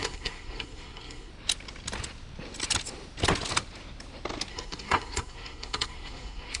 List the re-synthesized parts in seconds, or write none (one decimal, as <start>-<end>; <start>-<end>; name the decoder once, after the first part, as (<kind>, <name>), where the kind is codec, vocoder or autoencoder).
0.0-1.3 (codec, SNAC); 4.5-6.6